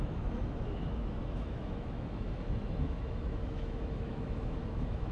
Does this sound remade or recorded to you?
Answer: remade